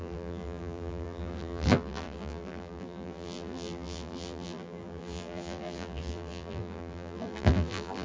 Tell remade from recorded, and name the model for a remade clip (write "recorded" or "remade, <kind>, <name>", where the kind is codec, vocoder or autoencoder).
remade, vocoder, BigVGAN v2